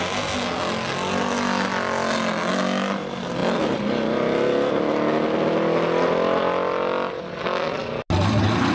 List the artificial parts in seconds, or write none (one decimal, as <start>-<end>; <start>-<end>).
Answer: none